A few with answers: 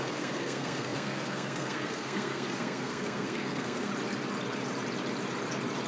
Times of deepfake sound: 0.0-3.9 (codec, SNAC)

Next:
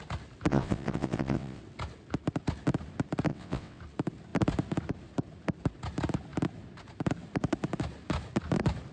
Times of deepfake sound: 0.5-1.6 (vocoder, WaveNeXt); 3.3-3.8

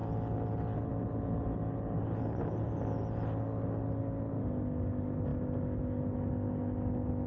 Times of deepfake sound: none

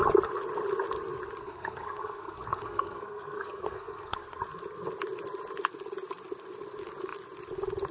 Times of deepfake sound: 1.4-4.4 (codec, SNAC)

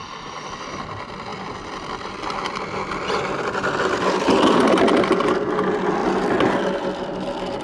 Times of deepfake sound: none

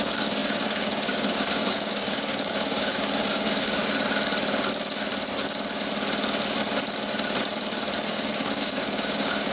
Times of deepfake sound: 0.0-3.8 (codec, DAC); 8.1-9.5

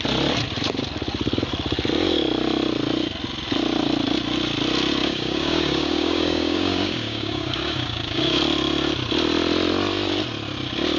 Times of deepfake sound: 5.0-8.4 (codec, DAC)

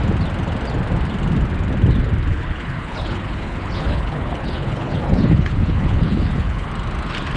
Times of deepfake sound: 2.3-6.7 (codec, HILCodec)